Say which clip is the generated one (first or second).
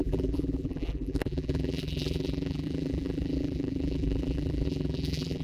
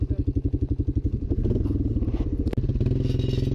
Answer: first